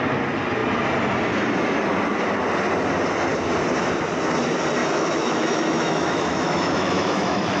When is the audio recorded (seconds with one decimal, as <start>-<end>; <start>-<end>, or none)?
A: 0.0-4.8